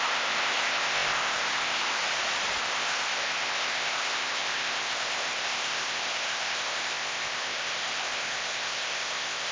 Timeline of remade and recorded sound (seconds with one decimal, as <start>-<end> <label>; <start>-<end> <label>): 0.0-2.0 remade; 2.0-2.6 recorded; 2.6-9.5 remade